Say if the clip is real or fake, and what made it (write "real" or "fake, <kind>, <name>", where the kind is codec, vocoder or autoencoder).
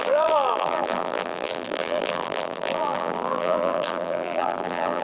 fake, vocoder, BigVGAN v2